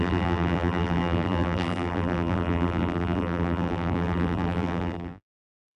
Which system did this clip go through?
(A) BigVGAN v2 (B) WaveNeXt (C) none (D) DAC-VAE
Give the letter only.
A